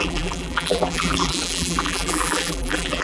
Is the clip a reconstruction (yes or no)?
yes